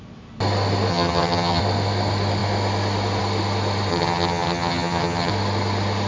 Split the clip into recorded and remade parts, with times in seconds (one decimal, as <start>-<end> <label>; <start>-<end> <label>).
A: 0.0-0.9 recorded; 0.9-1.6 remade; 1.6-3.9 recorded; 3.9-5.3 remade; 5.3-6.1 recorded